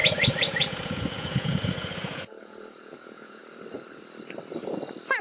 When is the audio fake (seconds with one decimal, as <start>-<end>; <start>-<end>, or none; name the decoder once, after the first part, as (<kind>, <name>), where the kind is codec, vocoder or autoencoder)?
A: 0.0-3.4 (vocoder, Vocos)